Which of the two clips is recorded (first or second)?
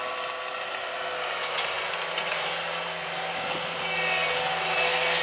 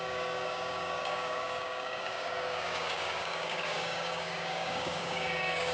first